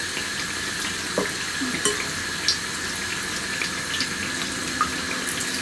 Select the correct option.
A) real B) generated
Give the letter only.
A